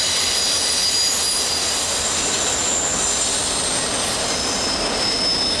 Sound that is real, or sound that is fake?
real